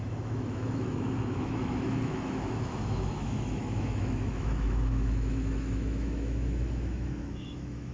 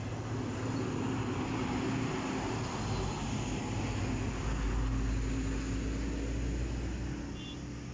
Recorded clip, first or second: second